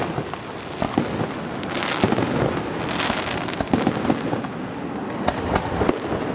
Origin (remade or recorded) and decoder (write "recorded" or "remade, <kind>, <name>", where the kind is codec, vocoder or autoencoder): recorded